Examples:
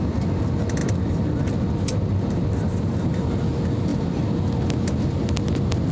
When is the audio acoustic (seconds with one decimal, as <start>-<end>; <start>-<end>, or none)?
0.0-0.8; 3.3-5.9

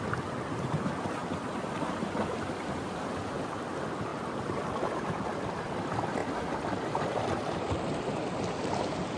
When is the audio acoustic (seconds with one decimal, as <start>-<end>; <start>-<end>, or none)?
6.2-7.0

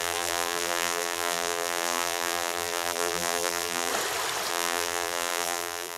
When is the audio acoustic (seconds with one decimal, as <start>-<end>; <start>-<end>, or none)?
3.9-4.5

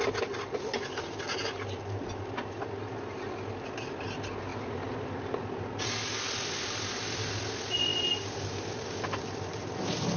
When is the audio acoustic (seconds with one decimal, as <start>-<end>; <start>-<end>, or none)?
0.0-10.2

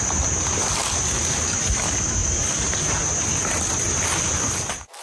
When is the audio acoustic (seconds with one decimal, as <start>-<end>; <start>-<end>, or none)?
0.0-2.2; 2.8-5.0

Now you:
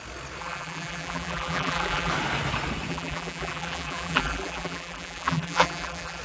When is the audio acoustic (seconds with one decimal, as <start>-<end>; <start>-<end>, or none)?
0.0-0.4; 2.1-2.9